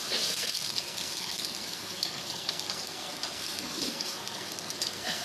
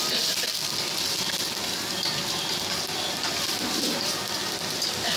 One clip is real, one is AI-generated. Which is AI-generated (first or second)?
first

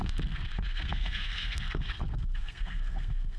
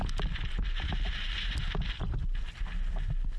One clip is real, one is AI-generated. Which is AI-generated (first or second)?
first